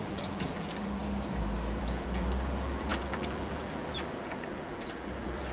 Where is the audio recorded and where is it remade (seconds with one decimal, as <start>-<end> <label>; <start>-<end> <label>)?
0.0-1.0 remade; 1.0-1.8 recorded; 1.8-5.5 remade